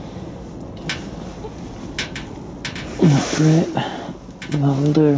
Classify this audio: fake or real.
real